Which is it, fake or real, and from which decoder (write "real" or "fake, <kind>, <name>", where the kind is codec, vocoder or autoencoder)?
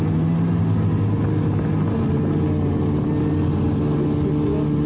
real